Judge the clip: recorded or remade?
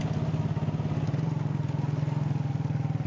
recorded